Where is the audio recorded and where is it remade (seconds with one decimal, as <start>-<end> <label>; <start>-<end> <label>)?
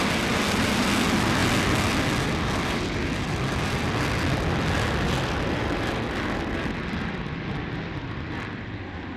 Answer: 0.0-9.2 recorded